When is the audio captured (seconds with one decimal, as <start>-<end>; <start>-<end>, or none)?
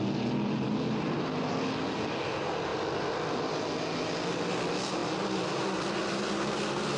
0.0-7.0